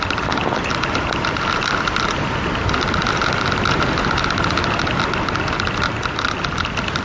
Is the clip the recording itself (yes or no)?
yes